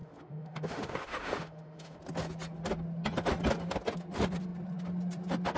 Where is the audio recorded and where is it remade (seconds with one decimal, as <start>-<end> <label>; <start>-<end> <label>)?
0.0-2.0 remade; 2.0-5.6 recorded